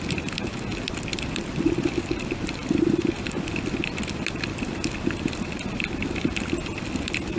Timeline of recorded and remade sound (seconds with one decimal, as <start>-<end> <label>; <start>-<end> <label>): 0.0-7.4 recorded